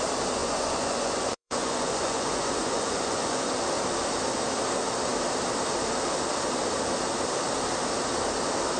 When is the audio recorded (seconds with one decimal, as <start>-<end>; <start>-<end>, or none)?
0.0-0.4; 3.5-8.8